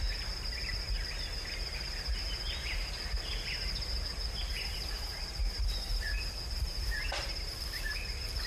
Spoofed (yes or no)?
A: no